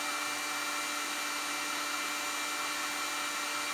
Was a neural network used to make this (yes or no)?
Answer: no